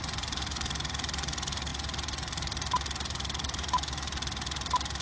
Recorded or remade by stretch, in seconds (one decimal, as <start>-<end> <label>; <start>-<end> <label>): 0.0-5.0 recorded